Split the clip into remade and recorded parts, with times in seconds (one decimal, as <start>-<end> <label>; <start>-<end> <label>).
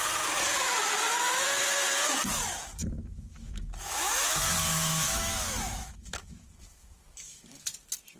0.0-1.1 recorded; 1.1-1.6 remade; 1.6-2.8 recorded; 2.8-7.7 remade; 7.7-8.2 recorded